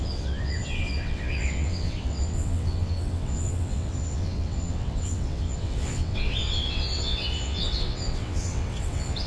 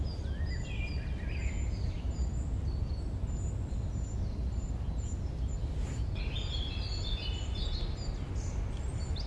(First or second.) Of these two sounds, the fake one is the first